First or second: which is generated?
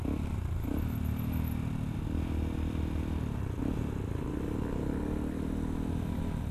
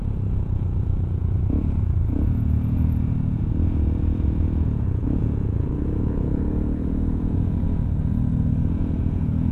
second